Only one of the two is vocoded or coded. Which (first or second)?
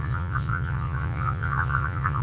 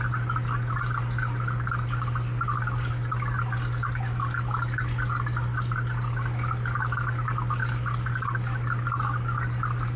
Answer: first